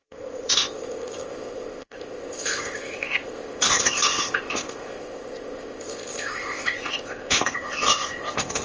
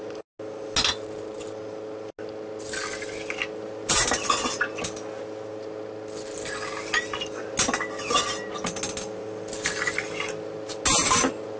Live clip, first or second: second